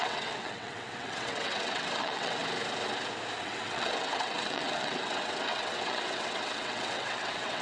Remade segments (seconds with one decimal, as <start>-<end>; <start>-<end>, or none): 0.0-2.4; 3.4-7.6